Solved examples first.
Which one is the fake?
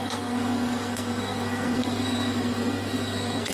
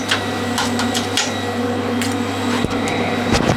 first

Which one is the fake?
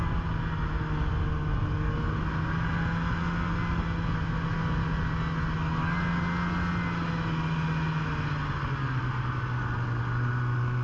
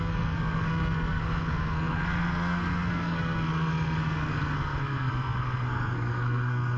second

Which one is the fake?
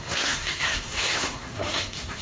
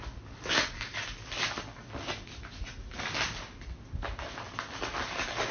first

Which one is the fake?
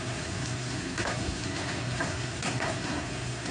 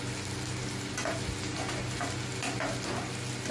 first